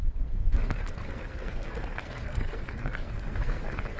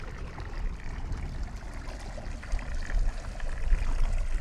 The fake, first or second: first